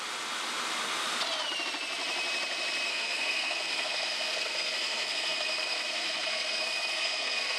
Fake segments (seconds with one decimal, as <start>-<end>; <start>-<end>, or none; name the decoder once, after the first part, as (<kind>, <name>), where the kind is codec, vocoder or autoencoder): 2.9-7.6 (codec, SNAC)